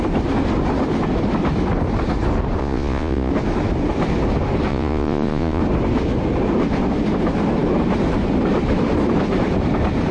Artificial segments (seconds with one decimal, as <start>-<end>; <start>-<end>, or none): 2.6-3.3; 4.7-5.6